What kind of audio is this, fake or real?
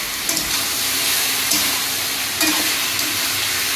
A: fake